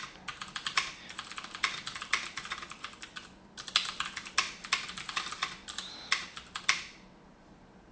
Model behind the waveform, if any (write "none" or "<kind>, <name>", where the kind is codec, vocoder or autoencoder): none